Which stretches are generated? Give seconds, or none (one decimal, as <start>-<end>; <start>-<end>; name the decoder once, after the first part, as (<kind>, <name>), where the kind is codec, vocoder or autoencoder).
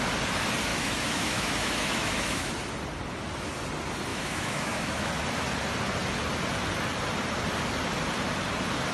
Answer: 0.7-2.5 (autoencoder, DAC-VAE); 4.1-5.1